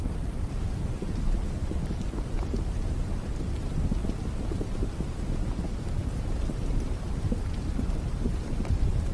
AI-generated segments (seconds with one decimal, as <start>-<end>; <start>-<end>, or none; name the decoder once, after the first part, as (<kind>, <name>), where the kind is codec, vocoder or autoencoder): 0.0-4.0 (vocoder, BigVGAN v2); 4.7-9.1